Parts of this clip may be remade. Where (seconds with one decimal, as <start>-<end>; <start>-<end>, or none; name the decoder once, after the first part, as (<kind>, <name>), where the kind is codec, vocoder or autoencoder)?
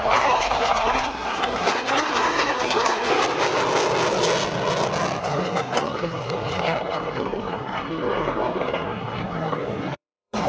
0.0-3.1 (codec, SNAC); 5.2-10.5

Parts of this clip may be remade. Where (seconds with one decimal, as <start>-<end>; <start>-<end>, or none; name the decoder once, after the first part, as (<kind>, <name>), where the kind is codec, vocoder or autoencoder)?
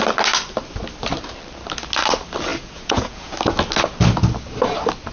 2.5-3.3 (vocoder, Vocos)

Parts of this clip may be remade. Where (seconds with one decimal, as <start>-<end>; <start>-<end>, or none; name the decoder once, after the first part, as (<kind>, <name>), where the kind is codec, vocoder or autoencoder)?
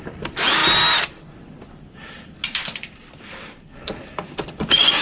none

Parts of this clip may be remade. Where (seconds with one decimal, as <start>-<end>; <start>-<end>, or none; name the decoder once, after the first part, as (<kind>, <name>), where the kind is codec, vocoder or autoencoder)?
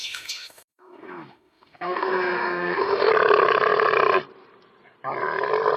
0.0-3.1 (autoencoder, DAC-VAE)